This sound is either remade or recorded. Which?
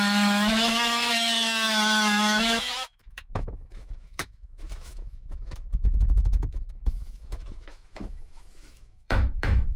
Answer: remade